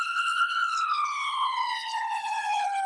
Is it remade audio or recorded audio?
remade